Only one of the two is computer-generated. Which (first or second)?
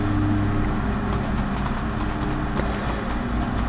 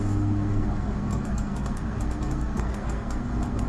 second